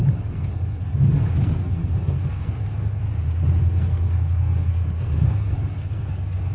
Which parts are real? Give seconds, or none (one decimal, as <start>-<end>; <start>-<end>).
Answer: 3.0-3.6